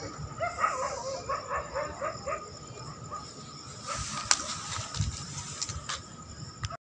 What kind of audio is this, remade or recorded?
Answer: recorded